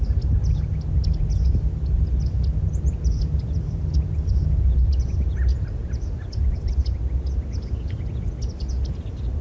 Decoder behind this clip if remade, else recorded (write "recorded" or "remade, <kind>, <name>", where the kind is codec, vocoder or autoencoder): recorded